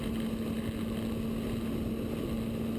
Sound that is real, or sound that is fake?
real